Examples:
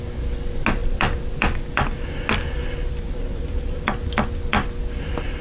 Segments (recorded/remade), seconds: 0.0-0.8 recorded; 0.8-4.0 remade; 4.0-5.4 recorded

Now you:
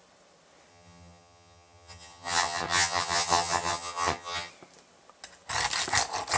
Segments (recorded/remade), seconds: 0.0-0.7 recorded; 0.7-4.5 remade; 4.5-6.4 recorded

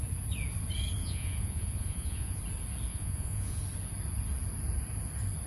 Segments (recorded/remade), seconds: 0.0-1.0 recorded; 1.0-2.4 remade; 2.4-2.9 recorded; 2.9-3.6 remade; 3.6-5.5 recorded

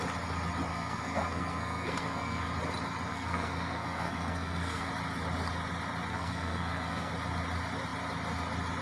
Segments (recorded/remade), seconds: 0.0-0.7 recorded; 0.7-2.5 remade; 2.5-3.1 recorded; 3.1-4.9 remade; 4.9-6.1 recorded; 6.1-7.1 remade; 7.1-8.8 recorded

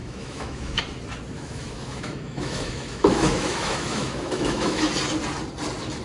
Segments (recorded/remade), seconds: 0.0-0.8 remade; 0.8-1.3 recorded; 1.3-4.9 remade; 4.9-6.0 recorded

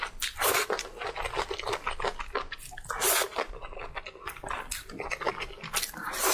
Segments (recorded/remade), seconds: 0.0-6.3 recorded

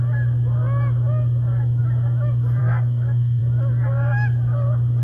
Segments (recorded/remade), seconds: 0.0-2.6 recorded; 2.6-3.4 remade; 3.4-5.0 recorded

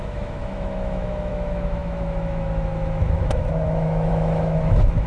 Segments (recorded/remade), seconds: 0.0-5.1 remade